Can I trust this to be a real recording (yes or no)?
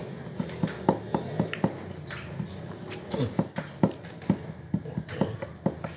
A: yes